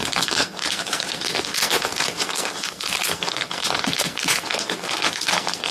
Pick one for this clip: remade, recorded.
remade